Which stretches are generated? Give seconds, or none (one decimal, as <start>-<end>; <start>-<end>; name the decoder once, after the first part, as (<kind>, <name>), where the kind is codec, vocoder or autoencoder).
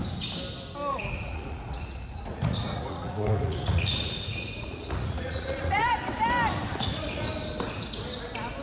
0.9-5.9 (vocoder, Vocos)